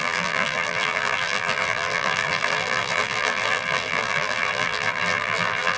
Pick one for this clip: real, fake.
fake